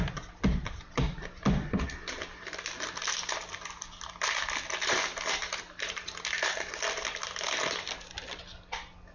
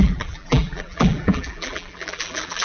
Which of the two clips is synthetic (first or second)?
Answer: second